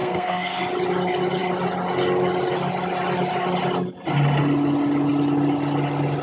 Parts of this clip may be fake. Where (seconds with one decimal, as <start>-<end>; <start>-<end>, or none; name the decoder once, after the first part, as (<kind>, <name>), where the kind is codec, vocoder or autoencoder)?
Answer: 0.0-0.6 (codec, SNAC)